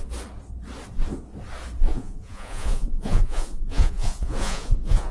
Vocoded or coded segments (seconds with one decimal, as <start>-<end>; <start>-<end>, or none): 1.9-5.1